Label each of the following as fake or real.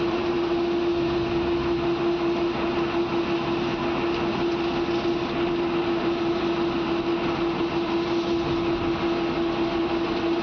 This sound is real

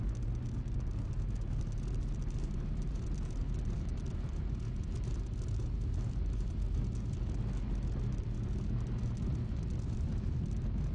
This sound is real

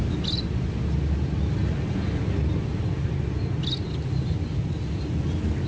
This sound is real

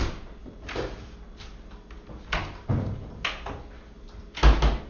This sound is real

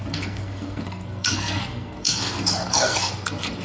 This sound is fake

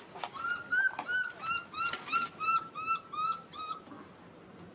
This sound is real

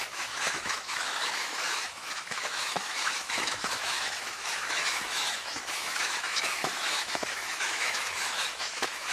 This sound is fake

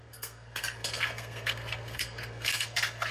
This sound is fake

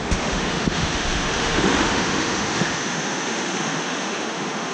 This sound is fake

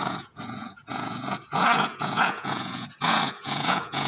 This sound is fake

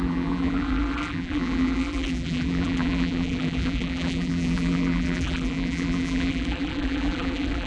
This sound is fake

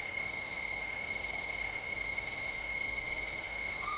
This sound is fake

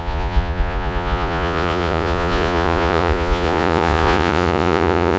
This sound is fake